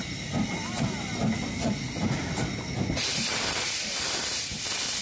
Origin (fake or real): real